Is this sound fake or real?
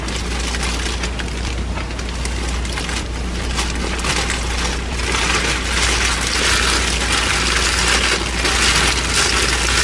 real